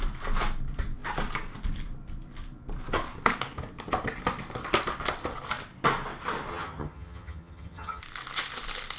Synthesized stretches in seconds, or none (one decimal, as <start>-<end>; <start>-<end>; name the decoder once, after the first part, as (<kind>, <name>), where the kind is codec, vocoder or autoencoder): 6.5-8.0 (vocoder, HiFi-GAN)